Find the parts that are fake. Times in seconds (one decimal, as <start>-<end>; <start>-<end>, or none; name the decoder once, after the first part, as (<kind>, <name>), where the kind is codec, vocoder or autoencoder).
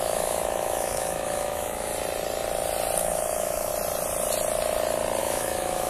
0.0-1.9 (autoencoder, DAC-VAE); 3.0-3.7; 5.2-5.9